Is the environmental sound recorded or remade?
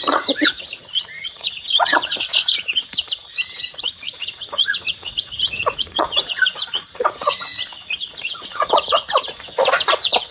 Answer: remade